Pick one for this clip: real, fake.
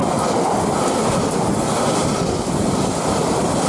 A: real